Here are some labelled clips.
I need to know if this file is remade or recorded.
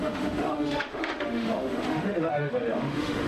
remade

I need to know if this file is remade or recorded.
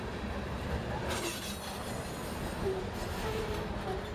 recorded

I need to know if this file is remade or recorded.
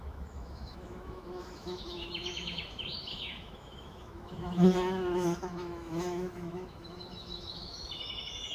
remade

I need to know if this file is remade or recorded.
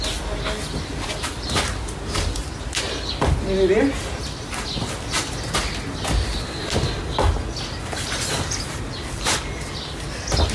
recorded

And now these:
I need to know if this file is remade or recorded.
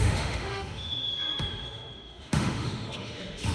remade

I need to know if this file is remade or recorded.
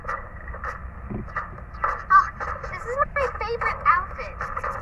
recorded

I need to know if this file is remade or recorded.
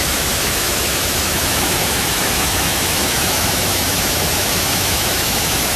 remade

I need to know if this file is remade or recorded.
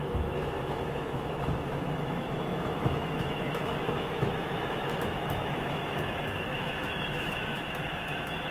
remade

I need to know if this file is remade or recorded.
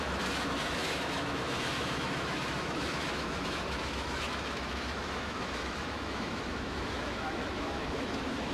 remade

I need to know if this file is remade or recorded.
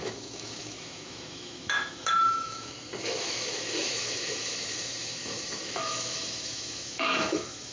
remade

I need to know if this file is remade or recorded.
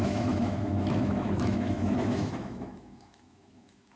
remade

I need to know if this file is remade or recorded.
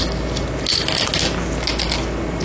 recorded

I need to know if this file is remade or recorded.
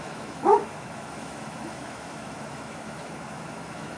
remade